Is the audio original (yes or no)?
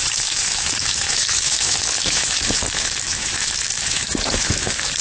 no